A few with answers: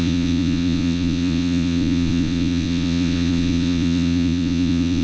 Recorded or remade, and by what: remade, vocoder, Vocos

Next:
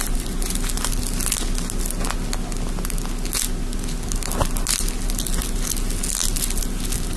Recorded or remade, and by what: recorded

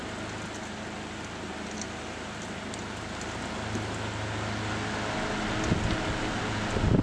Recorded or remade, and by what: recorded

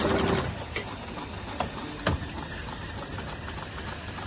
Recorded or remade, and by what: recorded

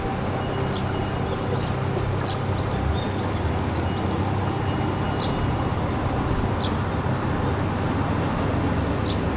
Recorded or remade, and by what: recorded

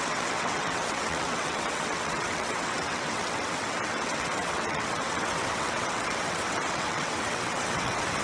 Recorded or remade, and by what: remade, vocoder, WaveNeXt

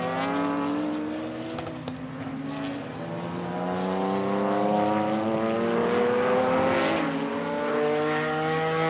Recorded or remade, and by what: recorded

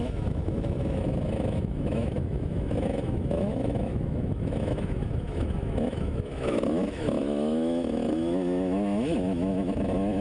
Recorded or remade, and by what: remade, autoencoder, DAC-VAE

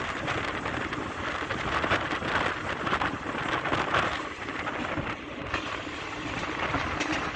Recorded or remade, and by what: recorded